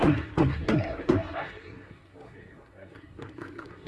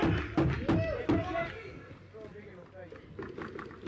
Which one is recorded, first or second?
second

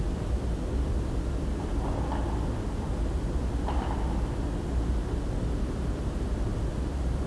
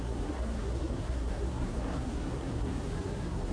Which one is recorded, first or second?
first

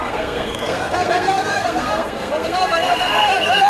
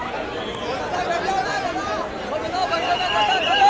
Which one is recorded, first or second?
second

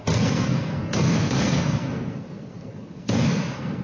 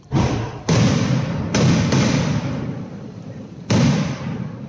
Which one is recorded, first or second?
second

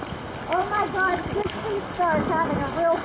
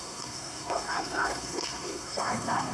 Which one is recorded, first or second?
first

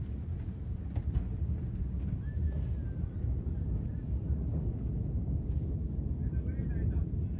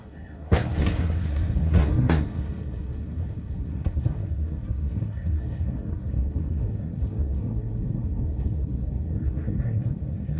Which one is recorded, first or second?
first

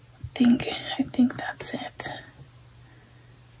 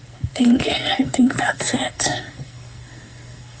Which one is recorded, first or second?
first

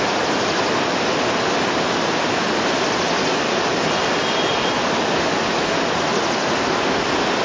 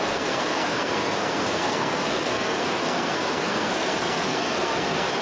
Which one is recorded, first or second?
first